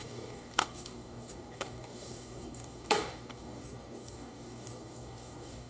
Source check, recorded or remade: remade